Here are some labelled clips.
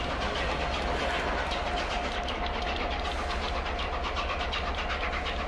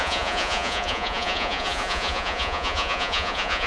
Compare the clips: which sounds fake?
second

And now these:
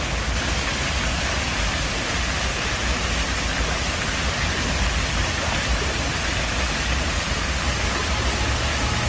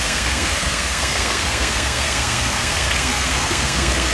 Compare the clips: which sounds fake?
second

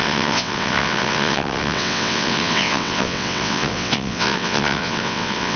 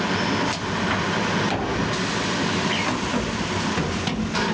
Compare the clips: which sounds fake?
first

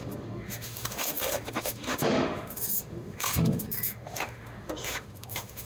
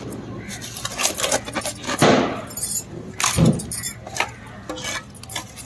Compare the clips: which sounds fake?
first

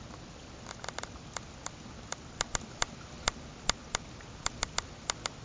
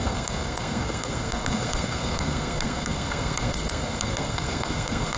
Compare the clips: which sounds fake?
second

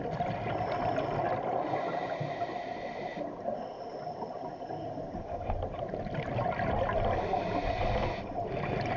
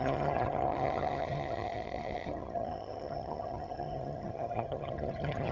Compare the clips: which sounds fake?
second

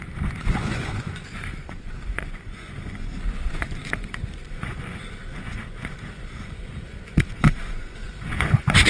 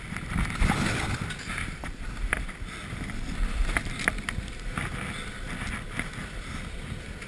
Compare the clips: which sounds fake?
first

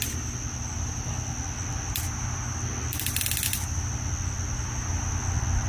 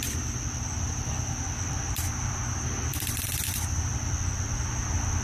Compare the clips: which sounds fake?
second